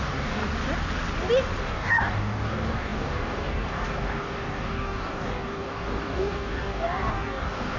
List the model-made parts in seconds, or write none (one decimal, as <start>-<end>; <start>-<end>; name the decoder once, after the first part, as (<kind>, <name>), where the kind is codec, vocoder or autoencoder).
0.0-0.4 (codec, DAC); 1.6-7.8